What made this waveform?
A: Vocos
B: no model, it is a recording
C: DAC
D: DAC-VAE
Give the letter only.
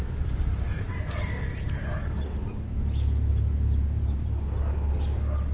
B